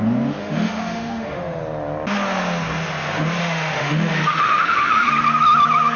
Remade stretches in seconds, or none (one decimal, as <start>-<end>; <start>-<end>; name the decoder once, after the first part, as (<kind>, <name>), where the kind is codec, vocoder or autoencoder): 0.4-1.6 (autoencoder, DAC-VAE); 3.4-5.1